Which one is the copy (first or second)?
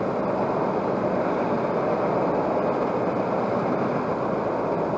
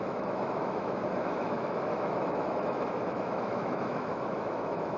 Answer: second